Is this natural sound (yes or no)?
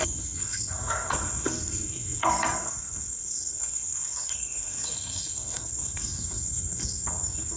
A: no